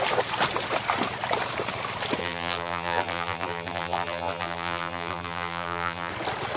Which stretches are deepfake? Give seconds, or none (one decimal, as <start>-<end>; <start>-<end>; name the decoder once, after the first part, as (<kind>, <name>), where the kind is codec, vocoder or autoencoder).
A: 2.2-6.1 (vocoder, BigVGAN v2)